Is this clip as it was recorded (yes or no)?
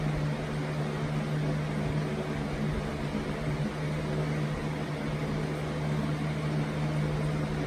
yes